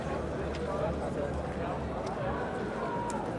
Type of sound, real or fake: real